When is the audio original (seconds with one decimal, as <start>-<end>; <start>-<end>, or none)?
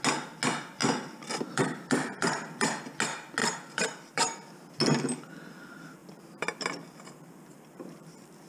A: 0.0-0.8; 2.8-3.4; 4.6-6.0